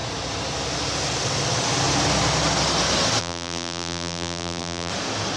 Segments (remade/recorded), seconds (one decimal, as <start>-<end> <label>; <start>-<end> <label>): 0.0-3.2 recorded; 3.2-4.9 remade; 4.9-5.4 recorded